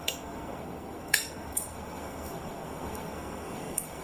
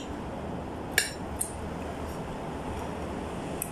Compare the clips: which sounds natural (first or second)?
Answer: second